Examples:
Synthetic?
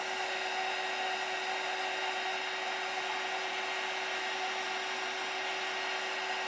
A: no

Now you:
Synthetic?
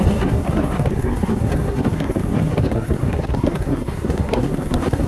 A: yes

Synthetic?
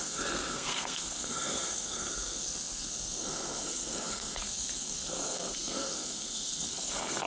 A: yes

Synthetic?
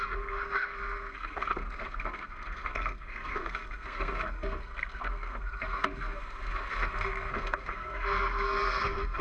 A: yes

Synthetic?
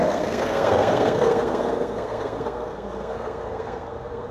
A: yes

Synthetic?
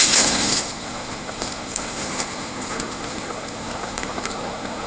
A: yes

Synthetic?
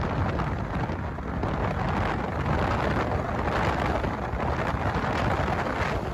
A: no